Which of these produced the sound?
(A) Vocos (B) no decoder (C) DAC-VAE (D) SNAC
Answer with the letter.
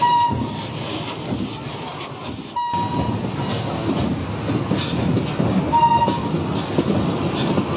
B